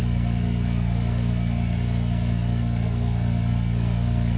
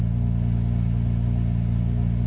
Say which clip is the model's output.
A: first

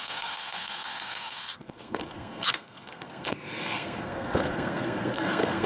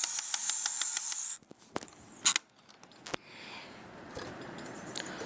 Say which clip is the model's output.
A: first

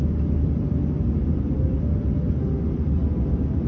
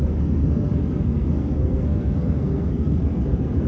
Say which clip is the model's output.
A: second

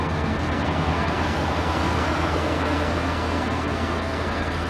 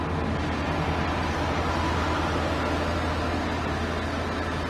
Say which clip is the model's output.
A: first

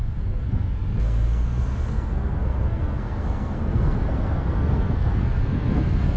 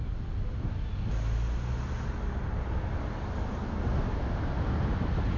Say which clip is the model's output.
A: first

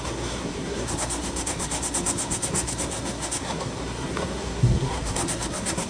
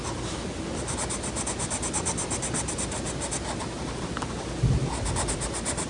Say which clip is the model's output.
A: first